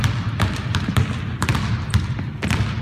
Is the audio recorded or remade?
recorded